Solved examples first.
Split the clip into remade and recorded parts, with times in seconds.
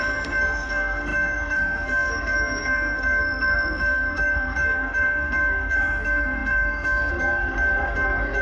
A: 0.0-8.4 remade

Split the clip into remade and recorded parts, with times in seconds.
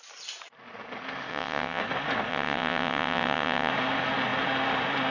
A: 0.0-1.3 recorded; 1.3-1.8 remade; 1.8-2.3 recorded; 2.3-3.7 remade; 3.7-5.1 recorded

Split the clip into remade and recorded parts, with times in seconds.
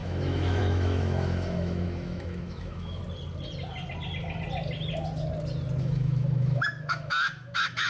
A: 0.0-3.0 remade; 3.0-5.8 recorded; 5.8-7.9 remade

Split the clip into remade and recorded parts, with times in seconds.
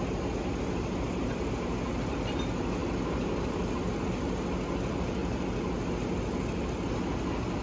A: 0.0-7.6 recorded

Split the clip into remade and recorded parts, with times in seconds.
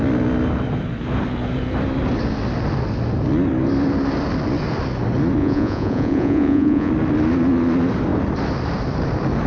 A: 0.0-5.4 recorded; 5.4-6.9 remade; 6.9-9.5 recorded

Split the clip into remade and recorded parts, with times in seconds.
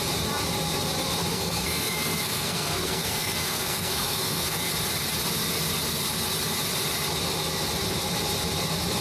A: 0.0-1.3 recorded; 1.3-4.7 remade; 4.7-9.0 recorded